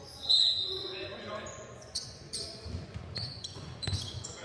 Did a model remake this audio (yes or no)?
yes